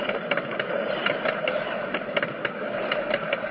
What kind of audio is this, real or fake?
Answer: real